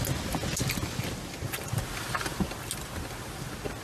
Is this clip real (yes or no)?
yes